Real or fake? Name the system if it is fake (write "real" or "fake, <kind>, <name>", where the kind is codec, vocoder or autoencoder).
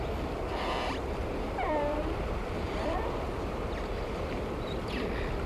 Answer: fake, vocoder, BigVGAN v2